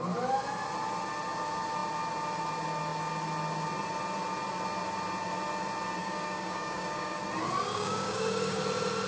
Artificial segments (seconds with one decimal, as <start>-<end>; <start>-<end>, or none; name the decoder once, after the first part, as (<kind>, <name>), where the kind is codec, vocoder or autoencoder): 6.0-7.2 (codec, DAC); 7.7-8.6